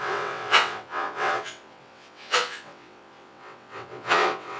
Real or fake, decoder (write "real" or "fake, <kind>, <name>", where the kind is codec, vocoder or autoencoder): fake, vocoder, WaveNeXt